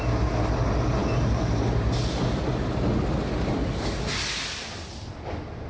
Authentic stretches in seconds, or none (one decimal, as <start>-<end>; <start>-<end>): 0.0-5.7